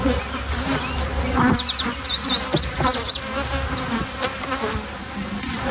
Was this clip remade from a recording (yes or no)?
no